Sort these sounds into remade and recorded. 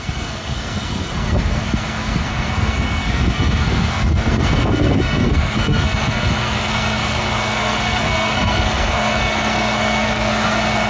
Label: remade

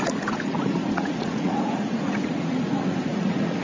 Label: remade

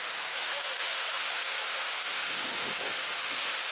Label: remade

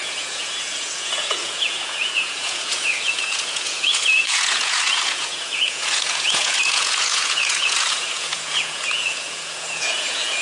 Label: remade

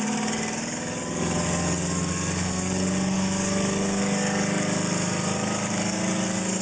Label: remade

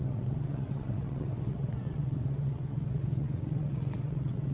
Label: remade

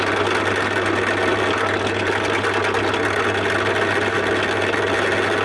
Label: recorded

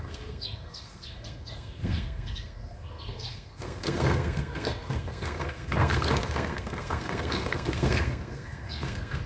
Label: remade